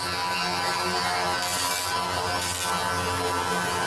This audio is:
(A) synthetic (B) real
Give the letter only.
B